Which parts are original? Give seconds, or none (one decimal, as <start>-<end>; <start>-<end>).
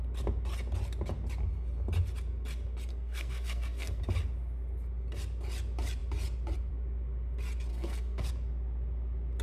0.0-2.9; 4.0-7.7; 8.3-9.4